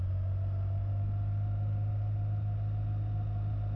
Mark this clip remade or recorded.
recorded